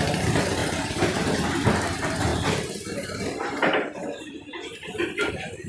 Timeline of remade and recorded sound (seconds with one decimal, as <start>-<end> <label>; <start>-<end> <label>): 0.0-5.7 remade